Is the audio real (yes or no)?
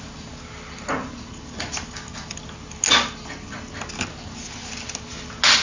yes